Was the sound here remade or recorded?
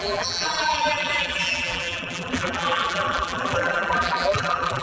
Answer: remade